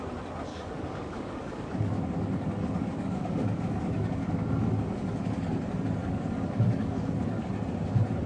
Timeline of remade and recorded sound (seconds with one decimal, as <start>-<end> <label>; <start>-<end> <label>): 0.0-0.5 recorded; 0.5-5.5 remade; 5.5-6.0 recorded; 6.0-7.5 remade; 7.5-8.3 recorded